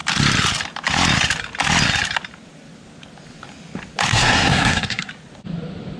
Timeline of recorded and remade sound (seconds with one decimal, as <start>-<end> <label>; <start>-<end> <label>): 0.0-4.1 recorded; 4.1-5.1 remade; 5.1-6.0 recorded